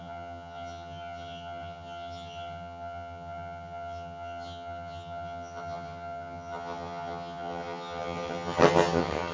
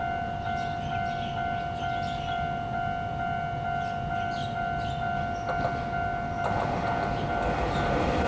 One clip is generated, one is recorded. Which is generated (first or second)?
first